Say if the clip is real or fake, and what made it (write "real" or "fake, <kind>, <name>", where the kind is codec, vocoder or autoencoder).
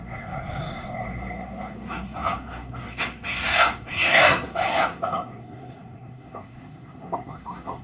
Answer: fake, codec, SNAC